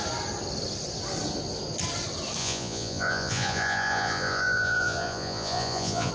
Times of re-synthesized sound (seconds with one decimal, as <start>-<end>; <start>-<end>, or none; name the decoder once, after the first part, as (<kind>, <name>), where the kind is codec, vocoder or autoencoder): 2.4-6.1 (vocoder, Vocos)